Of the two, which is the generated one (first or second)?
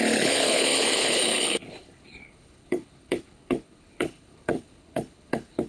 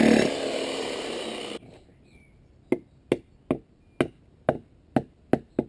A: first